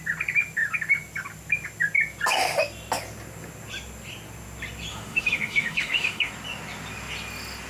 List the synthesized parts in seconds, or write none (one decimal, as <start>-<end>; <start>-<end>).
4.9-6.3